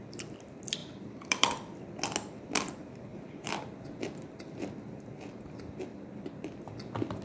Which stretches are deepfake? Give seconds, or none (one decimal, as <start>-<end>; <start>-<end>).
0.8-1.8; 3.1-4.4